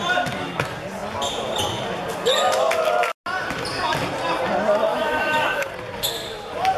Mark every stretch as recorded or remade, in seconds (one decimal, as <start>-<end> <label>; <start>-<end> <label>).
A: 0.0-4.9 recorded; 4.9-5.7 remade; 5.7-6.8 recorded